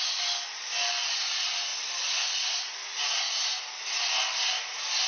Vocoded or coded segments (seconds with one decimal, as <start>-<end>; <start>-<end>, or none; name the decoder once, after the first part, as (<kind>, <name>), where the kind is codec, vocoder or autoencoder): none

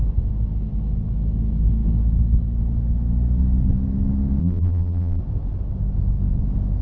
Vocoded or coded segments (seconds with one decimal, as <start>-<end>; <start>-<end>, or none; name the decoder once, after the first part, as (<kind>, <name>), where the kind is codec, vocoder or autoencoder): 4.4-5.2 (vocoder, BigVGAN v2)

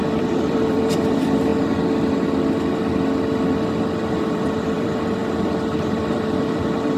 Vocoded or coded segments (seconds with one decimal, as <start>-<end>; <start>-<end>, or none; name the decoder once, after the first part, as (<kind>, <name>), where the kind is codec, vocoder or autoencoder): 0.0-1.5 (vocoder, BigVGAN v2); 4.1-7.0

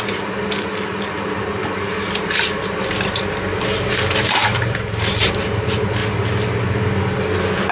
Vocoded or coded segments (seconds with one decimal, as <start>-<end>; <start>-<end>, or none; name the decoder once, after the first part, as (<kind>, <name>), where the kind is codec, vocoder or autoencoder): 1.6-5.3 (vocoder, BigVGAN v2)

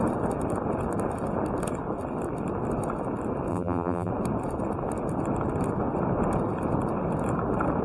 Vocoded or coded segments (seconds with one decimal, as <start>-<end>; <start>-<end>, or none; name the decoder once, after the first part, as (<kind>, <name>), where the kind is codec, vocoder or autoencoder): 3.5-4.1 (vocoder, BigVGAN v2)

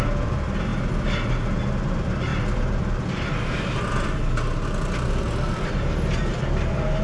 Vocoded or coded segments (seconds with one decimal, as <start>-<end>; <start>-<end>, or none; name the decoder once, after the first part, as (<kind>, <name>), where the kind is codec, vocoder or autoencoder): none

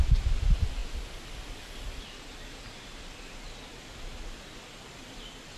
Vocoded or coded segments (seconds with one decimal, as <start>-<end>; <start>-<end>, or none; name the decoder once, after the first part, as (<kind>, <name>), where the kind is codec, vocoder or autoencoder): none